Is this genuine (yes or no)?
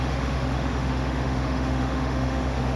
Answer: no